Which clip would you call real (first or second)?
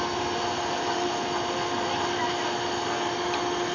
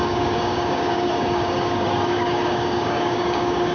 first